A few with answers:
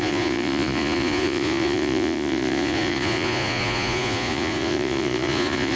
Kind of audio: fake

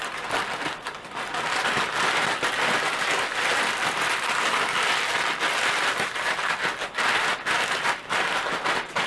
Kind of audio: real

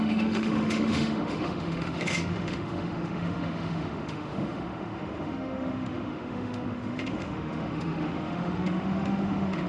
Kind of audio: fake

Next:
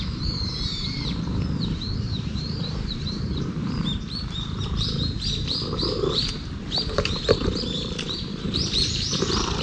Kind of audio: fake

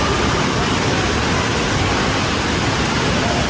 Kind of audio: real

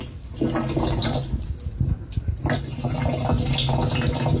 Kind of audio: real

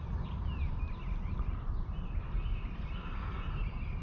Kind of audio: real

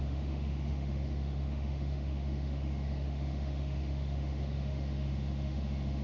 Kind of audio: fake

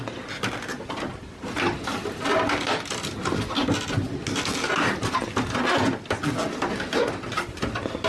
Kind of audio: real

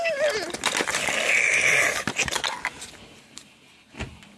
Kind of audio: real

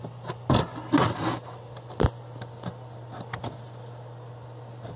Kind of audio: real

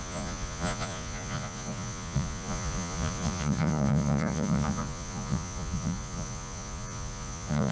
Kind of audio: fake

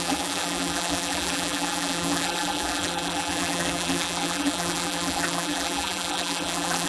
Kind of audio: fake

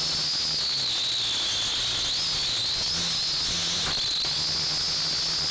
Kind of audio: real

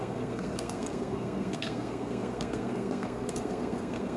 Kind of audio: fake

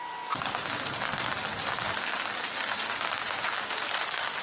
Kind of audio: real